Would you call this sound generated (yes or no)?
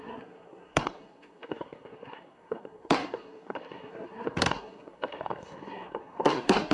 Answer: yes